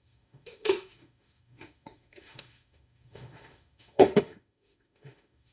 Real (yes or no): no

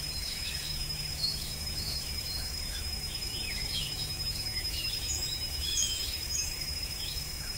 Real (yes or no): no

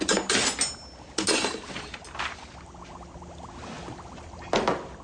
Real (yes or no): yes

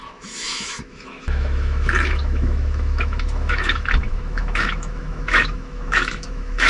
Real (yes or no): no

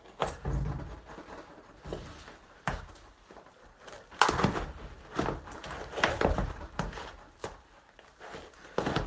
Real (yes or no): yes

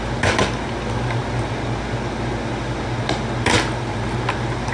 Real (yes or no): yes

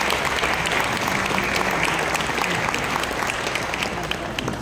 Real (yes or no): yes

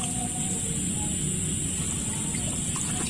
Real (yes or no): yes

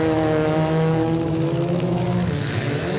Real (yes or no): no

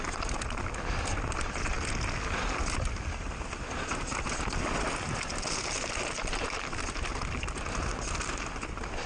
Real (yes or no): yes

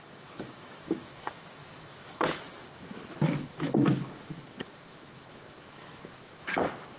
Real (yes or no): no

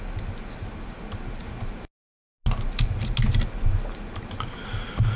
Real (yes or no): yes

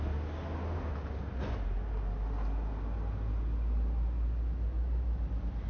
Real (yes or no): yes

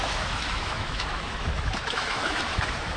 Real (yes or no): no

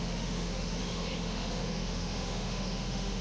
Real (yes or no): no